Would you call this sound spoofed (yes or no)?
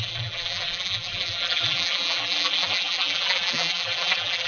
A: yes